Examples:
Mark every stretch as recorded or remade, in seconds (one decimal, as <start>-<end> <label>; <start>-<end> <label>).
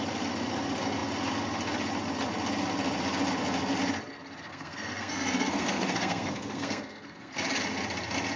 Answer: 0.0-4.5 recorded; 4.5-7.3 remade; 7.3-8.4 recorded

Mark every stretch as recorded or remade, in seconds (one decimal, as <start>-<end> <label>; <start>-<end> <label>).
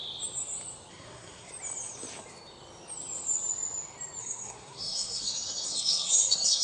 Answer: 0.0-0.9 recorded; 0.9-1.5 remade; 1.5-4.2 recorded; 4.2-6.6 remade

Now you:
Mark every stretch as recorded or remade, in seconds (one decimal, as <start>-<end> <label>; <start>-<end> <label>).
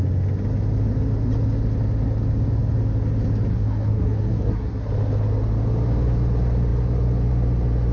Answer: 0.0-3.5 recorded; 3.5-4.8 remade; 4.8-7.9 recorded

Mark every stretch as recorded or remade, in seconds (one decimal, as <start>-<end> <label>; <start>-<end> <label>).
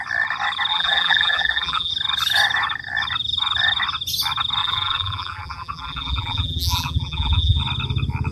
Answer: 0.0-0.7 recorded; 0.7-1.9 remade; 1.9-4.6 recorded; 4.6-7.6 remade; 7.6-8.3 recorded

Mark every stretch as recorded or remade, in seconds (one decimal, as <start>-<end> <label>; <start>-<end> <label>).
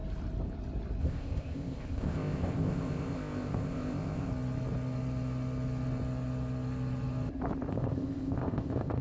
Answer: 0.0-1.0 recorded; 1.0-4.3 remade; 4.3-7.7 recorded; 7.7-9.0 remade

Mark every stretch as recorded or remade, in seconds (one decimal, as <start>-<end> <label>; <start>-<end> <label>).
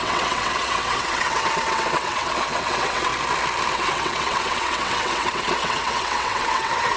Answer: 0.0-3.1 remade; 3.1-3.7 recorded; 3.7-7.0 remade